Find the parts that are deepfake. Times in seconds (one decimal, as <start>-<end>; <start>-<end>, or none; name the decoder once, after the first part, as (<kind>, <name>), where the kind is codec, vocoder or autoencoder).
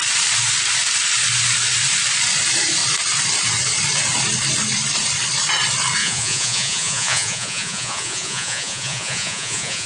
6.0-9.9 (vocoder, Vocos)